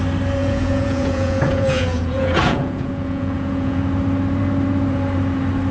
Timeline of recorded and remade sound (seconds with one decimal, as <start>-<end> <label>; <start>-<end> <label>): 0.0-0.4 recorded; 0.4-3.8 remade; 3.8-5.7 recorded